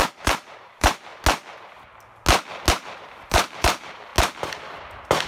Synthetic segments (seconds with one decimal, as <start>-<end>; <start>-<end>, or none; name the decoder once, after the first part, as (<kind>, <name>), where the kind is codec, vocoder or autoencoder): 0.0-1.1 (vocoder, BigVGAN v2); 2.7-4.1